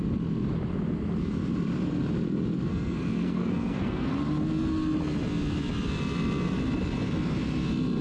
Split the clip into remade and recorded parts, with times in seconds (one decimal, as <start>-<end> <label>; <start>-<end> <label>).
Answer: 0.0-2.7 recorded; 2.7-4.1 remade; 4.1-8.0 recorded